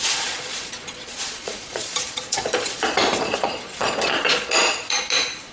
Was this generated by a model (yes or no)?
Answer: yes